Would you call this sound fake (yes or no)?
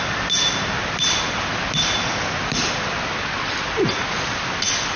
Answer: no